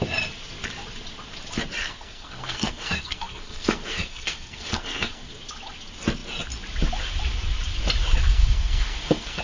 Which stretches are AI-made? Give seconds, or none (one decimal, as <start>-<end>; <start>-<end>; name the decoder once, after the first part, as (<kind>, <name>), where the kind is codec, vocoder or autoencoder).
1.8-5.3 (codec, SNAC); 8.2-9.4